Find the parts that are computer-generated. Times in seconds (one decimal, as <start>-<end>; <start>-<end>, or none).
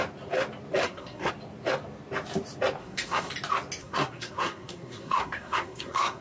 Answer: 0.8-1.3; 2.8-3.3; 3.8-6.2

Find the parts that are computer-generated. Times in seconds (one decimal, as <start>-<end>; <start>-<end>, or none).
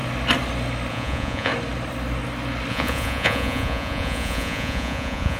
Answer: 0.9-1.5; 2.7-5.4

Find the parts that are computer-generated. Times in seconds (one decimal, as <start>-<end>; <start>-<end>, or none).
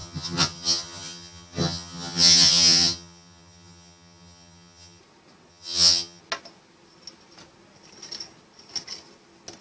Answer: 0.0-5.0; 5.5-6.2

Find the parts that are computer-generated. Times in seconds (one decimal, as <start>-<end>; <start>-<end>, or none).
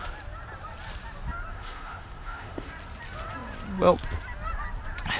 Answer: 1.5-2.7